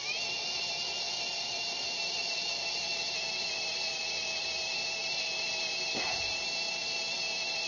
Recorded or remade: recorded